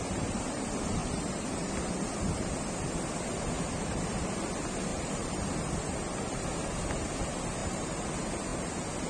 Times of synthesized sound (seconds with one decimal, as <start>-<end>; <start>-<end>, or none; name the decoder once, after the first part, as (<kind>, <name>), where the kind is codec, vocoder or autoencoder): 1.0-1.7 (vocoder, BigVGAN v2); 4.9-5.5; 7.6-8.1